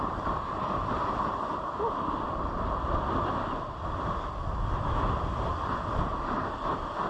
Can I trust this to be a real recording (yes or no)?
yes